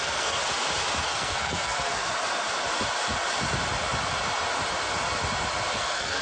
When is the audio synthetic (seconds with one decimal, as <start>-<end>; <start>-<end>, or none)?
0.0-0.4; 1.0-2.0; 5.7-6.2